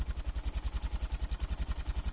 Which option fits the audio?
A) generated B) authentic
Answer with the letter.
B